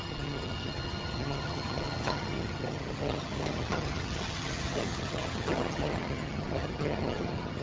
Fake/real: fake